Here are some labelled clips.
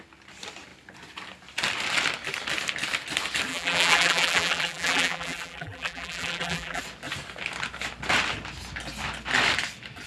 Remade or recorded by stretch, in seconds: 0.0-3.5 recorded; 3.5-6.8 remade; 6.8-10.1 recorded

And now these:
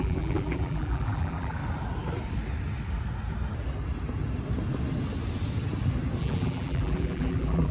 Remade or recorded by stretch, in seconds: 0.0-1.6 remade; 1.6-6.2 recorded; 6.2-7.7 remade

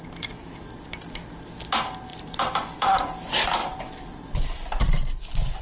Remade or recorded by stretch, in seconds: 0.0-2.1 recorded; 2.1-3.2 remade; 3.2-3.6 recorded; 3.6-4.8 remade; 4.8-5.6 recorded

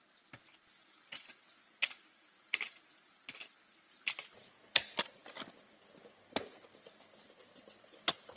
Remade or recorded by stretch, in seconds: 0.0-8.4 recorded

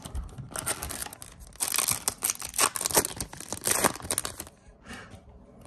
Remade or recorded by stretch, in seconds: 0.0-4.2 recorded; 4.2-4.9 remade; 4.9-5.7 recorded